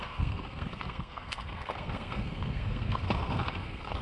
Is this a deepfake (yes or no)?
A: yes